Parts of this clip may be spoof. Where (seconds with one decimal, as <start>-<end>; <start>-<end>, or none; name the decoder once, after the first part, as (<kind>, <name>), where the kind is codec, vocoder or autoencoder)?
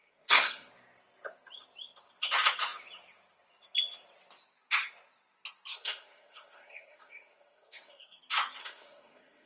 0.0-0.7 (codec, SNAC); 5.7-8.2; 8.6-9.5